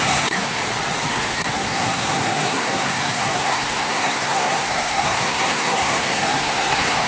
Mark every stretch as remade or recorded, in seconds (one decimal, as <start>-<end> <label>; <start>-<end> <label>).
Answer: 0.0-0.6 remade; 0.6-1.1 recorded; 1.1-7.1 remade